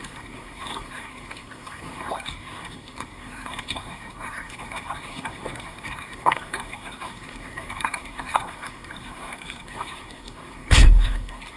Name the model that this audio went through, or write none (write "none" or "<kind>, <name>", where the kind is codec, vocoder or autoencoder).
codec, SNAC